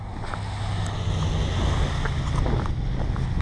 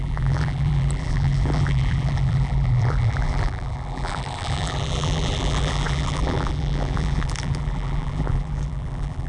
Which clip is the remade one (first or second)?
second